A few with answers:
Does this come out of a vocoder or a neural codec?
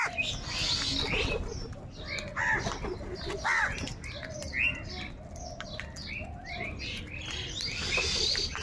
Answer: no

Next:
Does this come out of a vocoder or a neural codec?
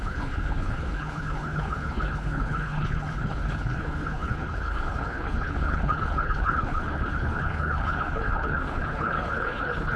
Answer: yes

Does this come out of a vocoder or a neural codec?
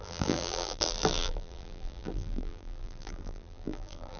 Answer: yes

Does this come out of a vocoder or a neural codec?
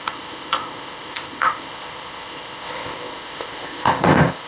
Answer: yes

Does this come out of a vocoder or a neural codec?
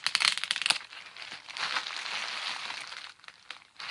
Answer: no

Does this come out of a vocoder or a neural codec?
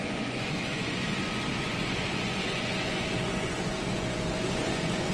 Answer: yes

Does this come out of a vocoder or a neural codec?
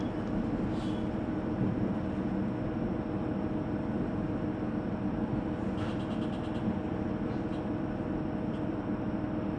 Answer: no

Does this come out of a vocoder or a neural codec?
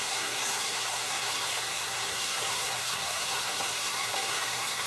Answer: yes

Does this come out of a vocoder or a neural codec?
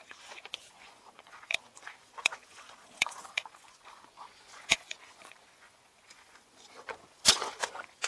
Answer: yes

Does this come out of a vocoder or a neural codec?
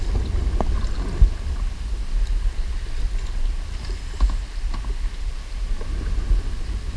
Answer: no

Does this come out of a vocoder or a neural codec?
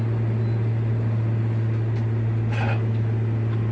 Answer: no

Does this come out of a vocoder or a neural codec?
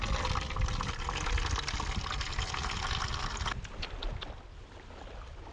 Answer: no